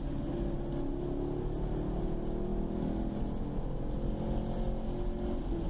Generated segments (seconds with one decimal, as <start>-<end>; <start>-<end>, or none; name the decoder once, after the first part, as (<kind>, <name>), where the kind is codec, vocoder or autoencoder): none